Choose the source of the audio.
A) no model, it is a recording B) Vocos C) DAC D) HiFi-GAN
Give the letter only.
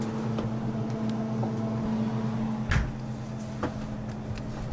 A